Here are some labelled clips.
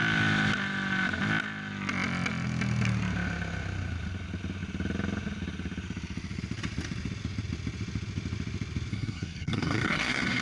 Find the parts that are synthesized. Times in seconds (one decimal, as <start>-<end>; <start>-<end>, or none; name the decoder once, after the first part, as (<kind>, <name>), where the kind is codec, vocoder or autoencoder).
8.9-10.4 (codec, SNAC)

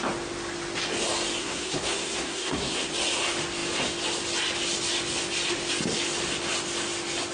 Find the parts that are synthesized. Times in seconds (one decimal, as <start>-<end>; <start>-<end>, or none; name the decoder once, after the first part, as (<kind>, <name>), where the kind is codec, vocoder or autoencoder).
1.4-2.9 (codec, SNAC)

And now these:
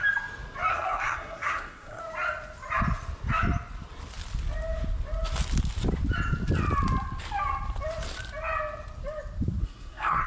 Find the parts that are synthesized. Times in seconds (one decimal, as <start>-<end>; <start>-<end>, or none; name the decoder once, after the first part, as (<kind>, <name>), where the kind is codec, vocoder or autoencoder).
0.7-2.0 (codec, SNAC); 9.6-10.3

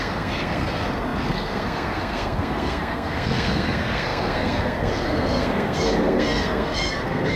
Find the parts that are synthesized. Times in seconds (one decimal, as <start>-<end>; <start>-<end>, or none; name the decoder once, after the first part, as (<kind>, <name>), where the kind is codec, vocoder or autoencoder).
0.0-7.4 (codec, SNAC)

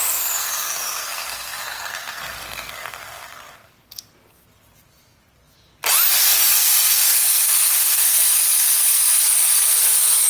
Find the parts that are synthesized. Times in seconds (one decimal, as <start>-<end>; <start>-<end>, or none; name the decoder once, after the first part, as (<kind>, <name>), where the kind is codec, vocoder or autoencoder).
0.0-4.1 (codec, SNAC); 6.2-10.3

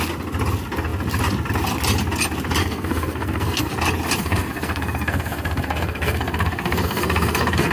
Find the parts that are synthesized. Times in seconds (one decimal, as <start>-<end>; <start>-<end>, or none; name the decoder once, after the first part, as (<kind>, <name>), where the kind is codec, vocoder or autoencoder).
2.6-3.8 (codec, SNAC); 4.2-7.7